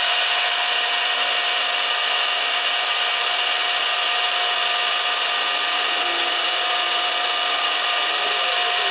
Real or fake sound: fake